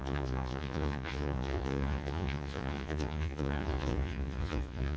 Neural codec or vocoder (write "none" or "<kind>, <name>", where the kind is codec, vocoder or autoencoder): vocoder, Vocos